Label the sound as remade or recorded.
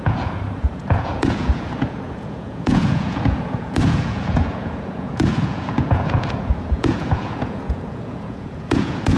remade